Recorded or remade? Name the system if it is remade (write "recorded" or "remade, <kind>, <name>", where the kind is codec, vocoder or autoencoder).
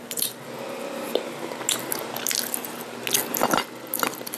recorded